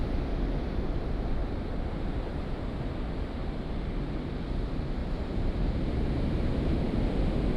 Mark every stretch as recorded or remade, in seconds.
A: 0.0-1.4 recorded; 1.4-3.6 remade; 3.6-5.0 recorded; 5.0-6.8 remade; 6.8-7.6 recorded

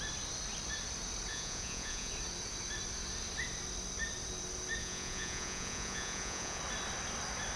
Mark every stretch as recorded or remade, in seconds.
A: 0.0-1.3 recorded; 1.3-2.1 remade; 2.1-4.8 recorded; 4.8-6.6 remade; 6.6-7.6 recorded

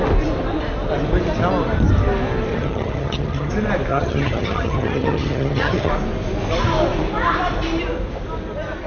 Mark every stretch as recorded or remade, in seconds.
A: 0.0-2.5 recorded; 2.5-3.5 remade; 3.5-3.9 recorded; 3.9-5.9 remade; 5.9-8.9 recorded